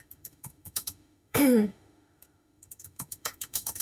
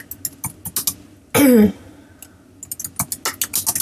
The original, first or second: second